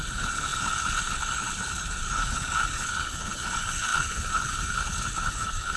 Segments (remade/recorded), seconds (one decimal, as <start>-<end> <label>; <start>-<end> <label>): 0.0-5.8 remade